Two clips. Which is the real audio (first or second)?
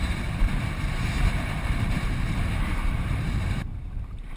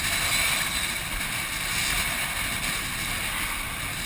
second